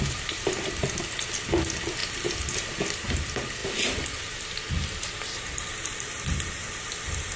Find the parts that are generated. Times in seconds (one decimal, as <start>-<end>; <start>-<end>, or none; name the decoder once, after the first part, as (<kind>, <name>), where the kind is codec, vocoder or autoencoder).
none